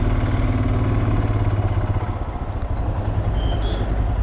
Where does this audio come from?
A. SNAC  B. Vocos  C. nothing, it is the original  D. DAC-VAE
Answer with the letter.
C